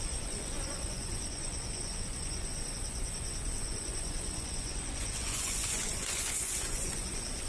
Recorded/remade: remade